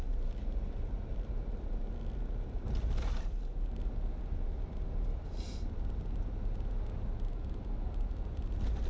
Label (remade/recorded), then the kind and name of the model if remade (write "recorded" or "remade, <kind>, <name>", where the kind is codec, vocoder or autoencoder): recorded